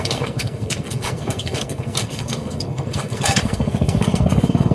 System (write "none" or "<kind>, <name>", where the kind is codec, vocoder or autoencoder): codec, SNAC